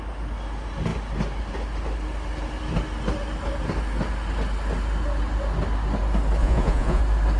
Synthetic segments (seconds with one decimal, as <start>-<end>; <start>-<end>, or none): 6.4-7.0